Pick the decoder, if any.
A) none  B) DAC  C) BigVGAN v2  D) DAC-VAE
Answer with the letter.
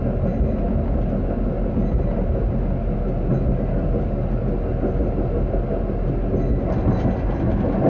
A